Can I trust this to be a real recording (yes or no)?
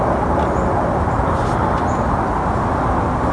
yes